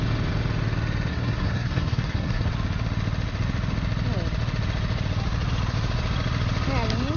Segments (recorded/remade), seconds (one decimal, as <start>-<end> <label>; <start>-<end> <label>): 0.0-1.1 recorded; 1.1-2.5 remade; 2.5-7.2 recorded